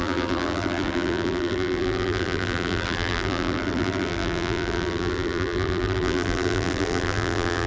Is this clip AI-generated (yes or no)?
yes